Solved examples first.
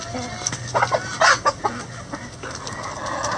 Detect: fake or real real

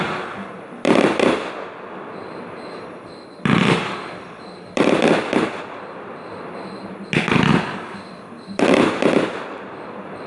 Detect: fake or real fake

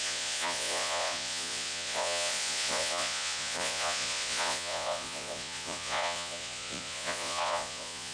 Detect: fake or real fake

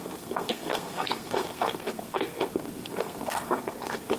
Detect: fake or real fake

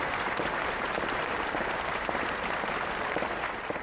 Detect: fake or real fake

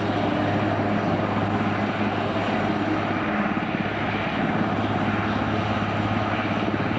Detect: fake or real real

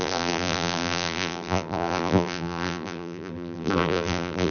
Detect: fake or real fake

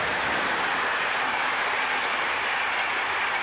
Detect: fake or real real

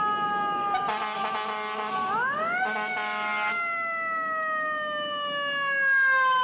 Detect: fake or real real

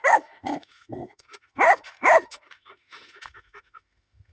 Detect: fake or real fake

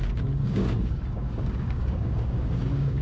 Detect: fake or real fake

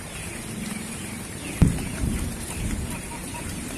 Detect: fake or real fake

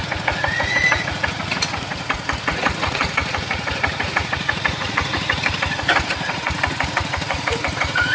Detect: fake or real fake